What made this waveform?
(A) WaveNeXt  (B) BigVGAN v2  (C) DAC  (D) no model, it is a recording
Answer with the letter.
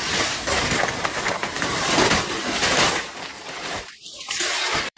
B